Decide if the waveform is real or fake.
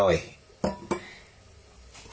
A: real